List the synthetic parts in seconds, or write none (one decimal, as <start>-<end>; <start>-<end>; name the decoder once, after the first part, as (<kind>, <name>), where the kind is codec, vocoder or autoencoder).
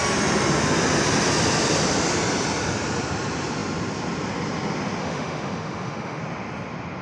5.0-6.2 (autoencoder, DAC-VAE)